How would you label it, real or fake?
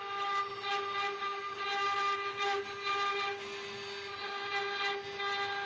real